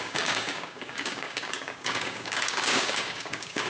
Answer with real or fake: fake